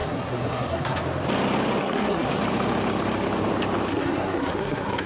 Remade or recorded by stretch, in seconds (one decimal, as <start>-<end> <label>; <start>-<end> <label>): 0.0-1.0 remade; 1.0-1.8 recorded; 1.8-2.4 remade; 2.4-3.9 recorded; 3.9-5.1 remade

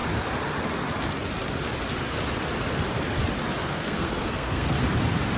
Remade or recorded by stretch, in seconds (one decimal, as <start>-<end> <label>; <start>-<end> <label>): 0.0-3.6 recorded; 3.6-4.8 remade; 4.8-5.4 recorded